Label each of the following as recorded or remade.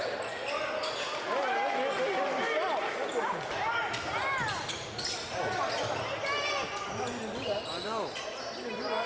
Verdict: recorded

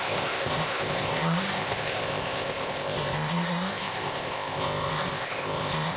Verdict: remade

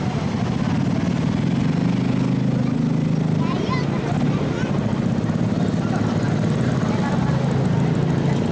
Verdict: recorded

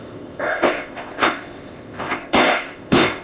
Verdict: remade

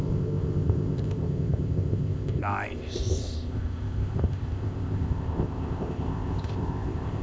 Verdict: remade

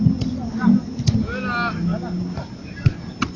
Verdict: recorded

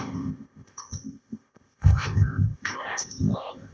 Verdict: remade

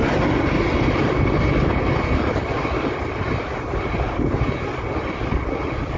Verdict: recorded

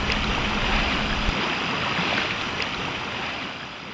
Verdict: recorded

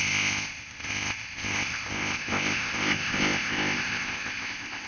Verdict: remade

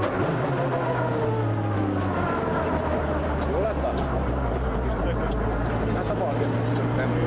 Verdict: recorded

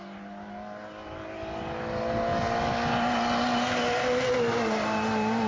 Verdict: recorded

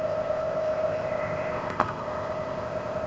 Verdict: remade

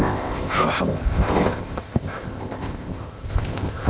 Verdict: remade